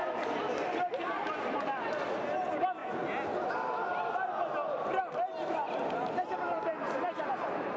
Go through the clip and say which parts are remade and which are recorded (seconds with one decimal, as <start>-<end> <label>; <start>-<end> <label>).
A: 0.0-2.8 remade; 2.8-5.9 recorded; 5.9-7.8 remade